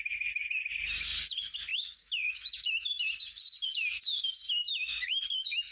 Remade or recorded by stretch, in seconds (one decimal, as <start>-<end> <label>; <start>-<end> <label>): 0.0-1.7 recorded; 1.7-3.0 remade; 3.0-4.6 recorded; 4.6-5.7 remade